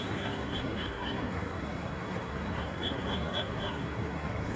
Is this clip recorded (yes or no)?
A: no